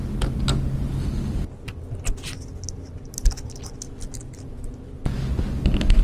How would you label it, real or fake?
real